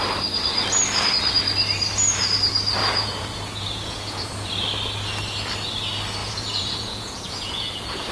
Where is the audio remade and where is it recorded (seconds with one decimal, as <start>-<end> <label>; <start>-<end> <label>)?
0.0-2.8 recorded; 2.8-4.5 remade; 4.5-6.2 recorded; 6.2-8.1 remade